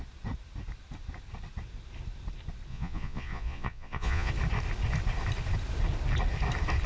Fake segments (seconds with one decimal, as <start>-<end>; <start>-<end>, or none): 2.7-4.3